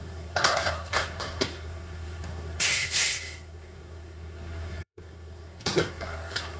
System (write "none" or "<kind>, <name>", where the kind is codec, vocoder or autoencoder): codec, SNAC